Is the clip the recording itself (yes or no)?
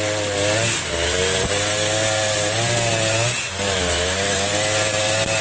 yes